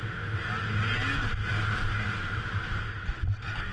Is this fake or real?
real